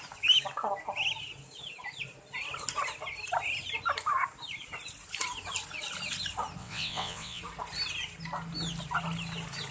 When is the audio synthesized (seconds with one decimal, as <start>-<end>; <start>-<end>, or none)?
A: 6.6-7.4